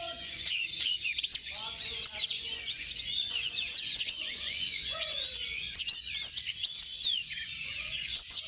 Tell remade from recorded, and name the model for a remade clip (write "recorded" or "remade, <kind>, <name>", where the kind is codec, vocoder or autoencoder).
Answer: remade, vocoder, Vocos